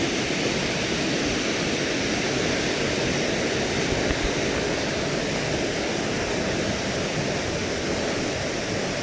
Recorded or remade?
recorded